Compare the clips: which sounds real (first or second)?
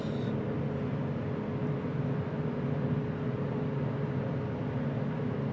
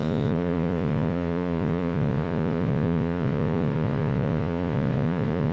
first